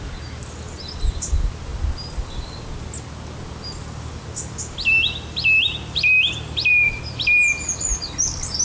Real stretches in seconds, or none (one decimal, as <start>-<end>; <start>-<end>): 0.0-8.6